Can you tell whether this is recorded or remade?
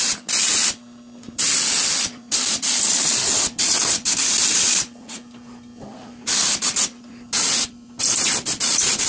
recorded